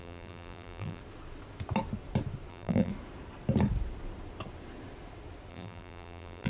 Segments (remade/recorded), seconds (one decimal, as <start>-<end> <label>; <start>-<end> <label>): 0.0-1.0 remade; 1.0-2.5 recorded; 2.5-2.9 remade; 2.9-5.5 recorded; 5.5-6.5 remade